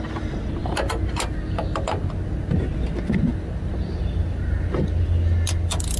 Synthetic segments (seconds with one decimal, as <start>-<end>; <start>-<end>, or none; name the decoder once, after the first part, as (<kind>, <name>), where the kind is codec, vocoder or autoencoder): none